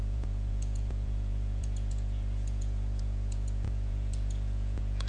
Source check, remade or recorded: remade